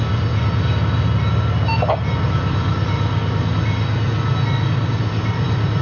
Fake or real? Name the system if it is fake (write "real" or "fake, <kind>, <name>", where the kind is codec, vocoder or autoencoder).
real